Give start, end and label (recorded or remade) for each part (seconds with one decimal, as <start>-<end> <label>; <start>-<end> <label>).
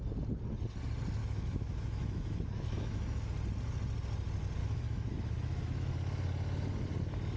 0.0-1.2 recorded; 1.2-3.3 remade; 3.3-4.6 recorded; 4.6-5.9 remade; 5.9-7.4 recorded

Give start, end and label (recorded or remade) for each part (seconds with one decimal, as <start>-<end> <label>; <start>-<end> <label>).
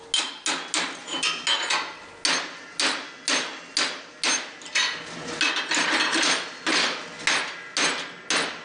0.0-8.6 recorded